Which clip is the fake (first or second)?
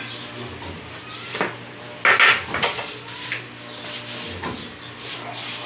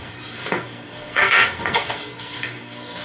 second